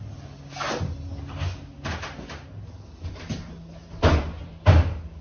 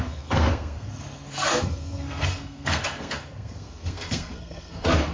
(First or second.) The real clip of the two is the first